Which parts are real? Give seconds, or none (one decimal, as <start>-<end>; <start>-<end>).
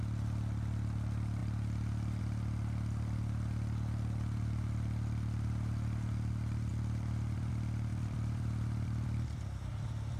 0.0-6.7; 7.5-7.9; 9.7-10.2